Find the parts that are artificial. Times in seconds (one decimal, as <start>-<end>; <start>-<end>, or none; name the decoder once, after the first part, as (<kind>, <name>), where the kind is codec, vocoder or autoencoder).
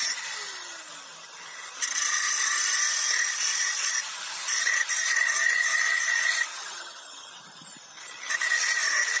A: 6.5-7.3 (vocoder, HiFi-GAN)